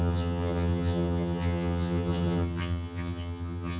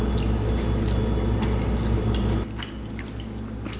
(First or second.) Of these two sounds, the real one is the second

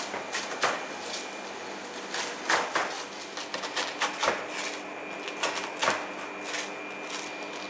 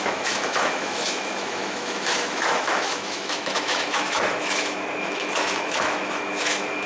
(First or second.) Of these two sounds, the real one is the first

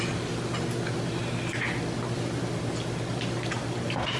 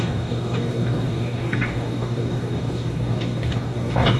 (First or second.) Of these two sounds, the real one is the first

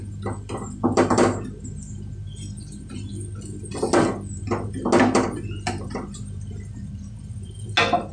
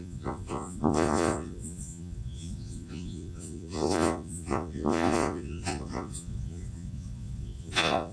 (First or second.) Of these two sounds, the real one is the first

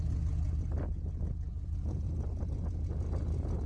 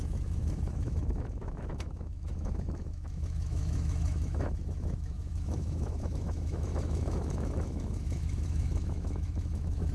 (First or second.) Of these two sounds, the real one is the first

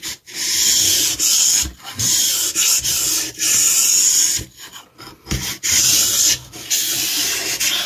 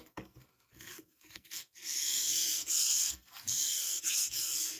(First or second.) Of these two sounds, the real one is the first